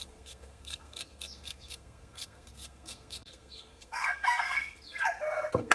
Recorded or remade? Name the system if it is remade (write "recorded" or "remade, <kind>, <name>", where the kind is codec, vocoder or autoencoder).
remade, codec, SNAC